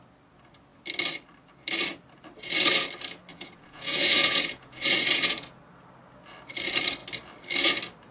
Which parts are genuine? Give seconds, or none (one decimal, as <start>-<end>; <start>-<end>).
0.0-3.3; 5.6-8.1